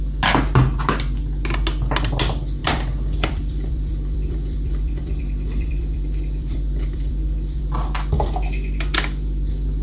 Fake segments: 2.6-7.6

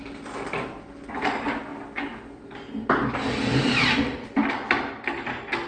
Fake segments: 3.5-4.5

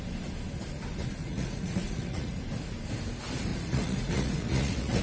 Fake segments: 1.2-2.4; 3.5-5.0

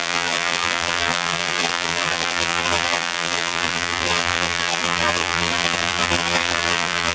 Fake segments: 0.0-7.1